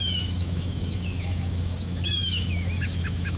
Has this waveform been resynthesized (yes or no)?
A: yes